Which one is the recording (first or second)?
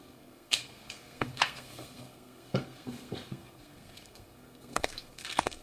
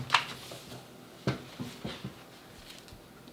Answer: second